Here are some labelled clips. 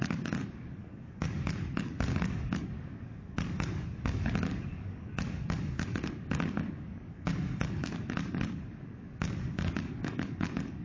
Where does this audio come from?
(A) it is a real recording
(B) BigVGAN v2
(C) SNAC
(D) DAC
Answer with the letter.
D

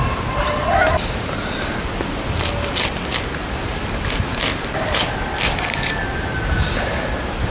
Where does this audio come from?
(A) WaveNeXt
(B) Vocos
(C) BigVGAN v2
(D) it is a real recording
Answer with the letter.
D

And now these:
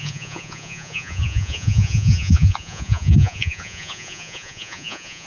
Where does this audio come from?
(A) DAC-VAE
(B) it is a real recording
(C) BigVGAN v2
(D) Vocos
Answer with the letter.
D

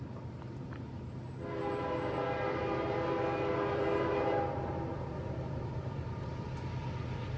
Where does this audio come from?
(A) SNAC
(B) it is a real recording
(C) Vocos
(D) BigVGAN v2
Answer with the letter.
D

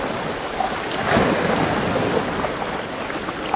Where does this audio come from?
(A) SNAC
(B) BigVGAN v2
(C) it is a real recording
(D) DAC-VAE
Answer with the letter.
C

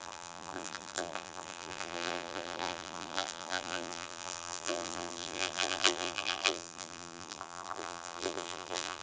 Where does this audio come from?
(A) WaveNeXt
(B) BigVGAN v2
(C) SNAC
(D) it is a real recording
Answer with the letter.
B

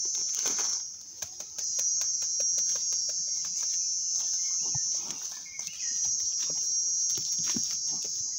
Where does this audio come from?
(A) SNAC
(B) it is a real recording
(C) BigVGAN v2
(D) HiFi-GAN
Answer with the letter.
B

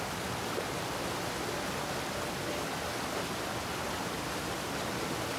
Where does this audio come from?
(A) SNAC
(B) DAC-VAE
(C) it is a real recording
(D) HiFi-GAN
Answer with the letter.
C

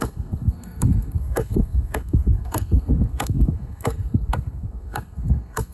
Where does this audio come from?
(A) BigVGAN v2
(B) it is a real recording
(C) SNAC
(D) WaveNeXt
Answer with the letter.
C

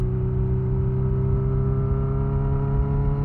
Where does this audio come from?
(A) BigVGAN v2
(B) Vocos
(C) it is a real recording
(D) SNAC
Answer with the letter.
C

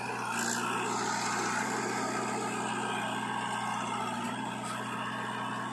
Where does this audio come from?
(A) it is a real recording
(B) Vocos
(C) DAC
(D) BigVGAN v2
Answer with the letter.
A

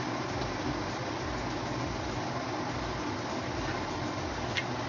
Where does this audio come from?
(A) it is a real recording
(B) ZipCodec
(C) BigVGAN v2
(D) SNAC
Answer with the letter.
A